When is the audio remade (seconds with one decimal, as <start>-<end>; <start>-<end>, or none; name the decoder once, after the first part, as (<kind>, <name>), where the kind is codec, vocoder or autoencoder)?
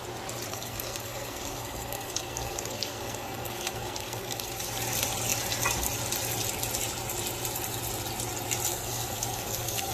0.5-4.5 (codec, SNAC); 8.7-9.9